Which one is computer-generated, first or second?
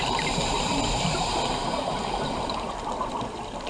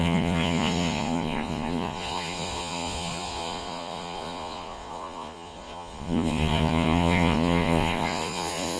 second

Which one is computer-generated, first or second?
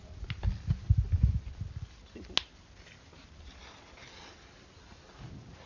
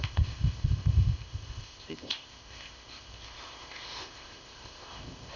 second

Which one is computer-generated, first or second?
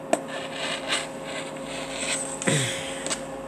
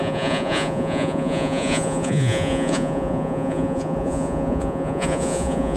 second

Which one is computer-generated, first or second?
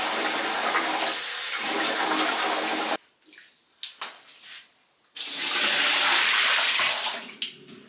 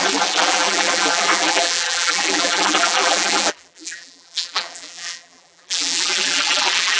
second